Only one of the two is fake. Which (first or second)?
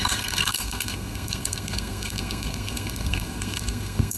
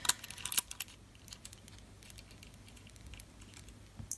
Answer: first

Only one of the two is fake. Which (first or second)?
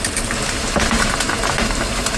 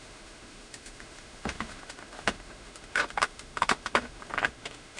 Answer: second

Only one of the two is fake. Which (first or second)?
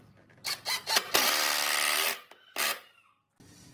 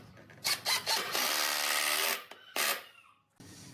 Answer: second